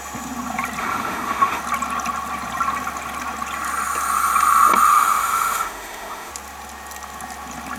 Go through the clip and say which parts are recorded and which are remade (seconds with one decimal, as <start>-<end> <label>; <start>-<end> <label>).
0.0-0.8 recorded; 0.8-1.6 remade; 1.6-4.9 recorded; 4.9-6.3 remade; 6.3-7.8 recorded